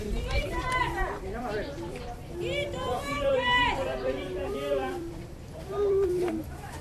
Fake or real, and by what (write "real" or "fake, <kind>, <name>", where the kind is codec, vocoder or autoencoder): fake, vocoder, BigVGAN v2